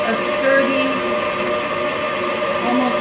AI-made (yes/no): no